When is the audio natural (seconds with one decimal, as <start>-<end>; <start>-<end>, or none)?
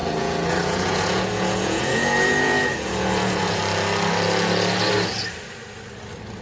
3.6-6.4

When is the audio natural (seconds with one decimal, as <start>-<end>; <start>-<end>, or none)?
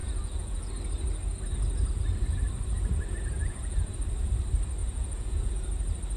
0.7-3.4; 3.9-4.8; 5.5-6.2